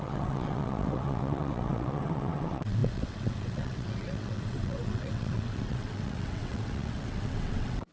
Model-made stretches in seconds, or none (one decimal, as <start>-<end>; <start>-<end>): 0.0-7.9